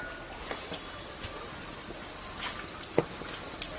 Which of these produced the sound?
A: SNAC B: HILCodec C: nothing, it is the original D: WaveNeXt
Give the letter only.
C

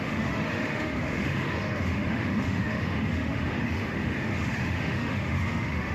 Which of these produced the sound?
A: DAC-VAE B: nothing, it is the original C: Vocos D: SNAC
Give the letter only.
A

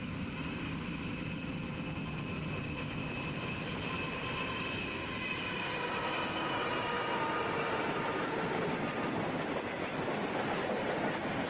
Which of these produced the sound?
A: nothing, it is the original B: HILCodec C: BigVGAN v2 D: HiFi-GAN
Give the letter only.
C